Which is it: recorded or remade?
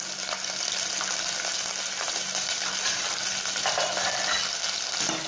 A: recorded